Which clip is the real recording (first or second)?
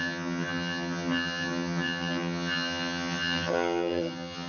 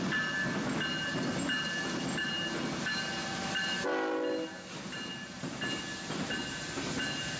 second